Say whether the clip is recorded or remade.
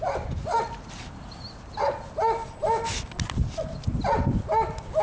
recorded